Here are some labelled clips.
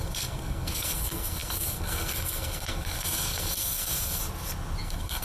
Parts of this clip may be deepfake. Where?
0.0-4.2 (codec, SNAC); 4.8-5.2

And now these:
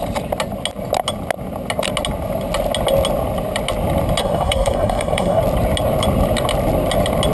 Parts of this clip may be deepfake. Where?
4.2-5.4 (codec, SNAC)